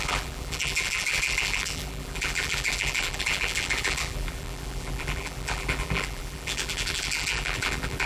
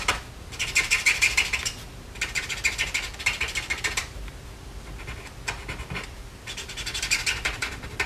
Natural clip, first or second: second